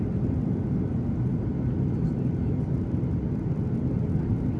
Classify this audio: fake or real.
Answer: real